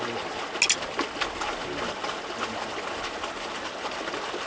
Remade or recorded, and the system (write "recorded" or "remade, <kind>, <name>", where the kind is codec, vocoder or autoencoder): recorded